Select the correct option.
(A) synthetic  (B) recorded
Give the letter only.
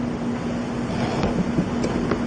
B